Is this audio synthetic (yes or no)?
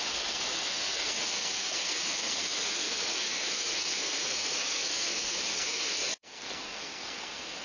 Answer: yes